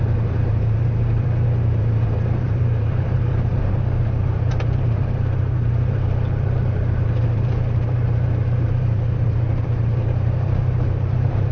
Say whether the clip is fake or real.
fake